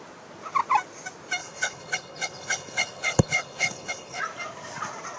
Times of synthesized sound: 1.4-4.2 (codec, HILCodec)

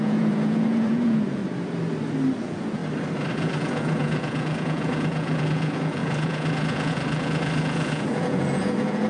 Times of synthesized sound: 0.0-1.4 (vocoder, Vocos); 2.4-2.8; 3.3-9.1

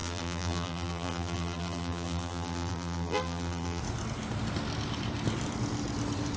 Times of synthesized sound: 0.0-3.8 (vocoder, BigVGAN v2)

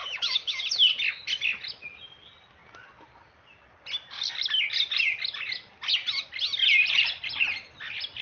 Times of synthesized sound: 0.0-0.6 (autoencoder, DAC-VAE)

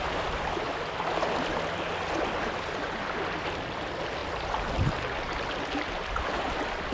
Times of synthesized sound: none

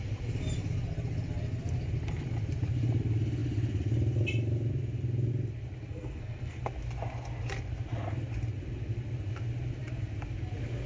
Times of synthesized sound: 5.9-6.6 (codec, SNAC)